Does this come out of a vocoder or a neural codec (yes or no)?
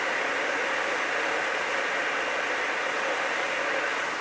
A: no